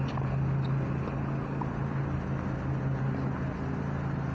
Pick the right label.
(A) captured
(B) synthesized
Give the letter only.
A